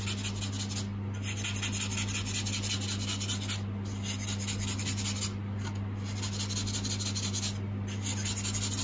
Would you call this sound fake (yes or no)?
no